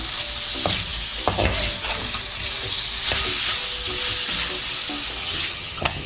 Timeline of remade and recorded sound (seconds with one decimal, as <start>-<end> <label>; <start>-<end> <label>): 0.0-5.2 recorded; 5.2-6.1 remade

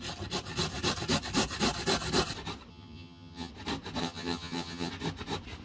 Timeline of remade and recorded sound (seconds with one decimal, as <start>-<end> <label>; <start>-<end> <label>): 0.0-2.7 recorded; 2.7-3.5 remade; 3.5-4.0 recorded; 4.0-4.9 remade; 4.9-5.6 recorded

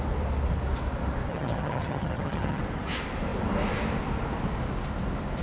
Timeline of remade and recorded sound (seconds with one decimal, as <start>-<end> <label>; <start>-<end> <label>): 0.0-1.3 recorded; 1.3-2.6 remade; 2.6-5.4 recorded

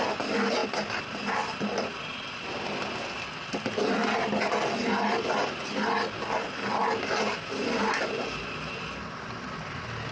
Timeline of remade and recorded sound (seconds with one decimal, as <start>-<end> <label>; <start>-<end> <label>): 0.0-10.1 recorded

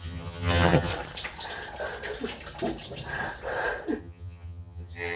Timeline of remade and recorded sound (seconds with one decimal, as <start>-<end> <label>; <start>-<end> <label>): 0.0-0.9 remade; 0.9-4.0 recorded; 4.0-5.2 remade

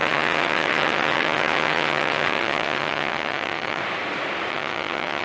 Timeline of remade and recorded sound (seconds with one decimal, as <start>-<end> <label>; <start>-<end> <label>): 0.0-3.8 remade; 3.8-4.5 recorded; 4.5-5.2 remade

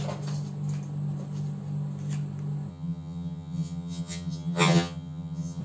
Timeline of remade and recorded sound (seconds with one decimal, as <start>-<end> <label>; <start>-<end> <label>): 0.0-2.7 recorded; 2.7-5.6 remade